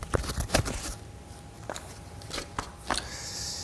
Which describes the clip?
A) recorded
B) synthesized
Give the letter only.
A